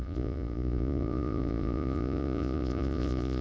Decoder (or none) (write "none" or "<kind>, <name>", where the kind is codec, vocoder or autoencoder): vocoder, Vocos